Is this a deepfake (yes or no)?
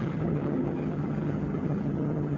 yes